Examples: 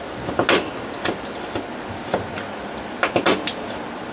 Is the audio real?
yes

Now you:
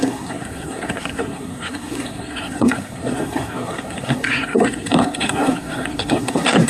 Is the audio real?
no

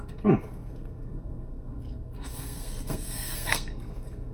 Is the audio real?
no